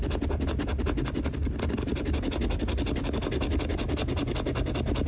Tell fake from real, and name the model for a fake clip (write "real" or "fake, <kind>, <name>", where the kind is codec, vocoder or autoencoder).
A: real